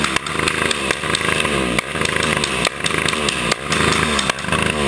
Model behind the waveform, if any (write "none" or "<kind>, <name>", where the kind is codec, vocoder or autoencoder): none